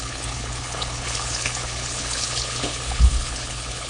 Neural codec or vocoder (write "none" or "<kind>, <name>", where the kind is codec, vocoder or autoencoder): codec, HILCodec